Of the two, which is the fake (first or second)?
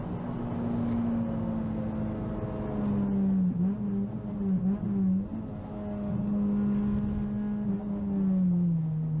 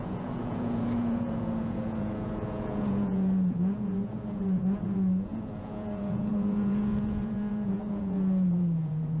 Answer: second